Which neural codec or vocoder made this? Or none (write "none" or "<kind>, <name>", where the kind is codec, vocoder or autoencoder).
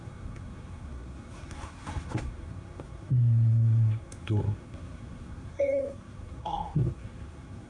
codec, SNAC